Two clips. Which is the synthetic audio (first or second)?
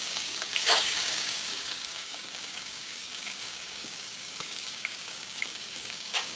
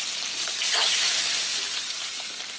first